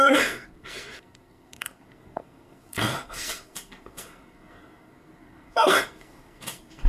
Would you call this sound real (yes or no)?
no